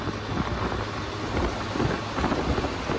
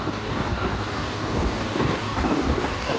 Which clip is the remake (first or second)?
second